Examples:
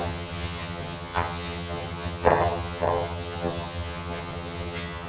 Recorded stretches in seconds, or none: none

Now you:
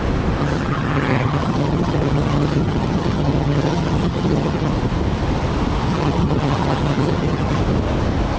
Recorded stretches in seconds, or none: 0.0-0.4; 4.7-5.9; 7.6-8.4

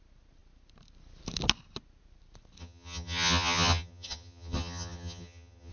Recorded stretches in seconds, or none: 0.0-2.6